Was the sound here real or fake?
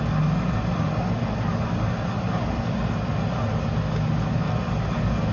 real